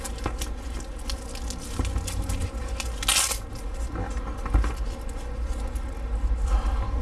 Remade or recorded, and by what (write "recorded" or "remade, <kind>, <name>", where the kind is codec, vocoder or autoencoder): recorded